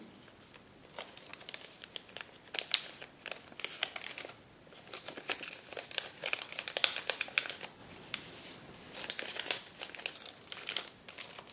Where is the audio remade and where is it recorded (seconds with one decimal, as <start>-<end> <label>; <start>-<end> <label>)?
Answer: 0.0-11.5 recorded